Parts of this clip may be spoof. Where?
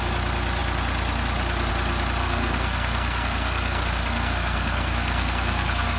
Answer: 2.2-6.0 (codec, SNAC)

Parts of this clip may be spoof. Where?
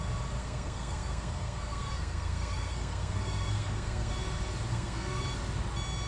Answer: 0.4-4.1 (codec, SNAC); 4.7-5.2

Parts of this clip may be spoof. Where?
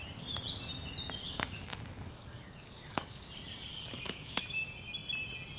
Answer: 1.2-3.3 (codec, DAC); 3.7-4.4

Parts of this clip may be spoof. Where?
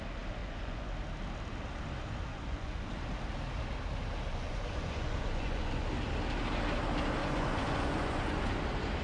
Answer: 0.4-0.9 (vocoder, Vocos); 2.3-2.9; 4.3-5.9; 7.2-8.5